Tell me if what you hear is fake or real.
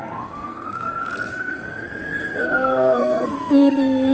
fake